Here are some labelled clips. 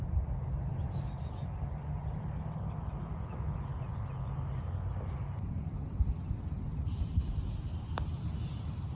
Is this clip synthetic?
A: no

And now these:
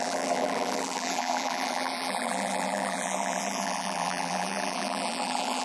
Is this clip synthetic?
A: yes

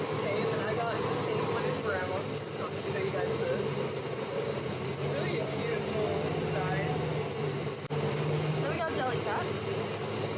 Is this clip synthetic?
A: no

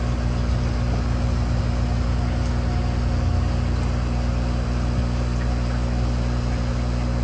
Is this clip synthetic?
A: no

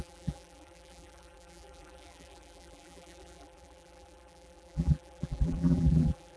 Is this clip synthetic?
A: yes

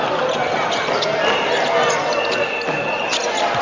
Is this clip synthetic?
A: no